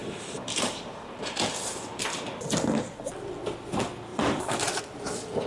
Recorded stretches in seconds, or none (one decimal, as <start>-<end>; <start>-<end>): 2.3-4.1; 4.8-5.5

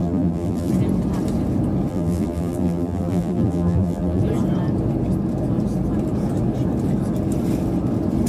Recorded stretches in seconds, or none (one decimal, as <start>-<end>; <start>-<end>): 0.7-1.9; 4.2-8.3

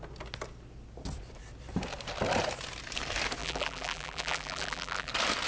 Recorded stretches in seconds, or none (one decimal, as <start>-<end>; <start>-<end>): 0.0-3.4; 5.1-5.5

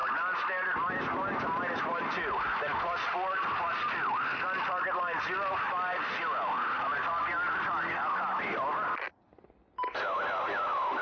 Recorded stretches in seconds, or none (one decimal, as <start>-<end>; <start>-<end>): 0.0-11.0

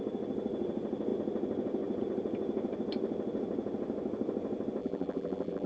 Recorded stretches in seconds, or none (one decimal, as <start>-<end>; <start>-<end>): 0.0-4.8